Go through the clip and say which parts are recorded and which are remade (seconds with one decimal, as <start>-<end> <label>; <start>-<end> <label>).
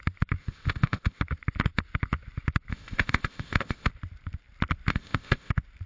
0.0-0.4 recorded; 0.4-1.2 remade; 1.2-2.7 recorded; 2.7-3.9 remade; 3.9-4.9 recorded; 4.9-5.5 remade; 5.5-5.9 recorded